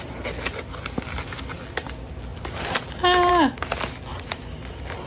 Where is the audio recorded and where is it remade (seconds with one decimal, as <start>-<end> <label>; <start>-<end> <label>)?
0.0-4.1 recorded; 4.1-5.1 remade